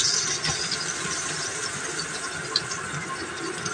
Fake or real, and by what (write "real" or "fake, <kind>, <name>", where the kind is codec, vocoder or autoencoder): real